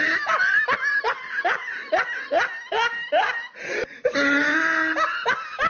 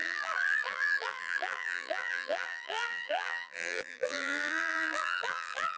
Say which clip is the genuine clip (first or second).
first